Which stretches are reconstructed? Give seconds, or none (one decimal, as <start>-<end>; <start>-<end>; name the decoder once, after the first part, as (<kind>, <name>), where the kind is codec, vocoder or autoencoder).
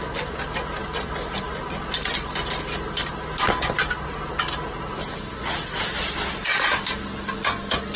none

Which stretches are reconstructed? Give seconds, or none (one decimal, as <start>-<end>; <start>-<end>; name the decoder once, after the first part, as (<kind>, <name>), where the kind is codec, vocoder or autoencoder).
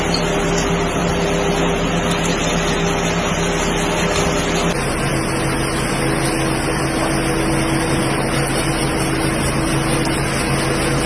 none